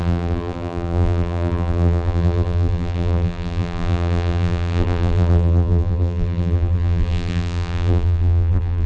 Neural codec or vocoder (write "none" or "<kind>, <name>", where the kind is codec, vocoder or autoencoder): vocoder, BigVGAN v2